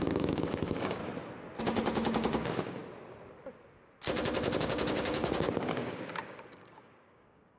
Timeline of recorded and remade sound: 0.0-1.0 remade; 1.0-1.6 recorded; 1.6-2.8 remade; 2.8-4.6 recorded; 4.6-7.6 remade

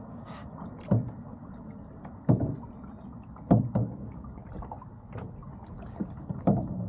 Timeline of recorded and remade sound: 0.0-0.4 remade; 0.4-3.7 recorded; 3.7-4.4 remade; 4.4-5.7 recorded; 5.7-6.9 remade

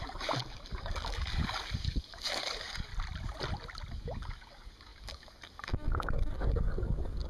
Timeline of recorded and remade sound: 0.0-2.9 remade; 2.9-3.9 recorded; 3.9-7.3 remade

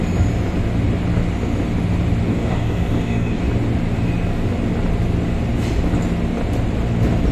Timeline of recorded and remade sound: 0.0-2.3 recorded; 2.3-3.4 remade; 3.4-7.3 recorded

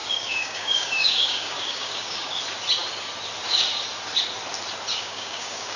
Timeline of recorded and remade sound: 0.0-2.4 remade; 2.4-4.9 recorded; 4.9-5.8 remade

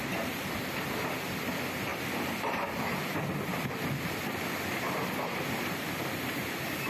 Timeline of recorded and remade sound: 0.0-6.9 recorded

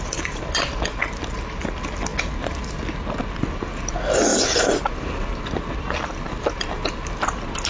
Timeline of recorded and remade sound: 0.0-7.7 recorded

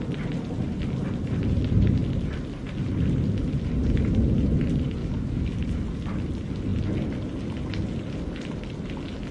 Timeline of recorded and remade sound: 0.0-5.0 recorded; 5.0-5.6 remade; 5.6-9.3 recorded